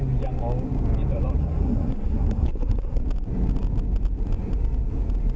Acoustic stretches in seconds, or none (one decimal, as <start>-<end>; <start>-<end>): 0.0-1.4; 3.0-5.4